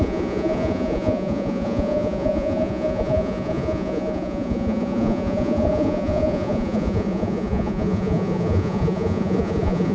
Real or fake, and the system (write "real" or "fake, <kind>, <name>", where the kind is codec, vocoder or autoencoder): fake, vocoder, Vocos